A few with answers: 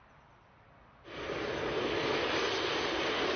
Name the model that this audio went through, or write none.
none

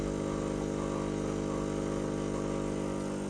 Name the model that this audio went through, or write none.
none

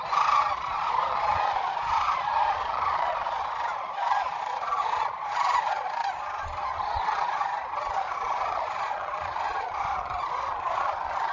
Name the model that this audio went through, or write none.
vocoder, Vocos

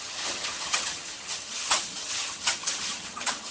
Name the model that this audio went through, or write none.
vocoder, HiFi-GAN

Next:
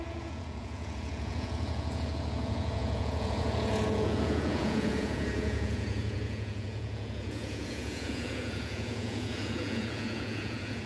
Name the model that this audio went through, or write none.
vocoder, Vocos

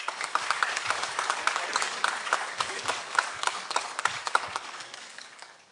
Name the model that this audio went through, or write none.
codec, DAC